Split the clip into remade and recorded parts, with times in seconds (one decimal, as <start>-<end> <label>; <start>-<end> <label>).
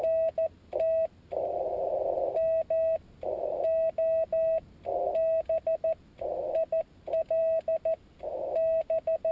0.0-9.3 recorded